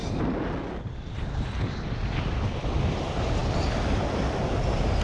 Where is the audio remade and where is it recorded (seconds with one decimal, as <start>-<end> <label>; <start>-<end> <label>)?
0.0-5.0 recorded